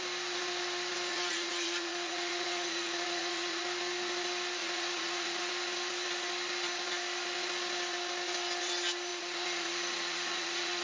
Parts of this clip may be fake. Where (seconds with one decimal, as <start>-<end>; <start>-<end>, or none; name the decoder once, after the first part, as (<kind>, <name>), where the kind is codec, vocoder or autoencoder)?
1.1-3.6 (vocoder, Vocos); 4.6-5.5; 9.1-10.8